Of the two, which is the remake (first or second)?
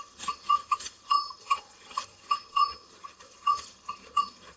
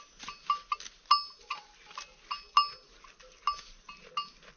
first